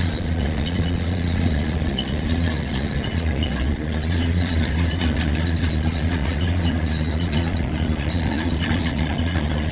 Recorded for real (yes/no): no